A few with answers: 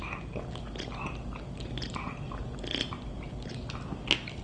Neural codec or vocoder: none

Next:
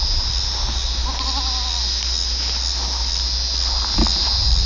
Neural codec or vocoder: none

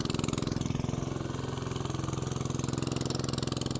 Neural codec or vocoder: none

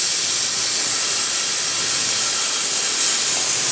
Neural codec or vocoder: none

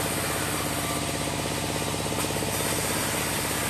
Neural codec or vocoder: none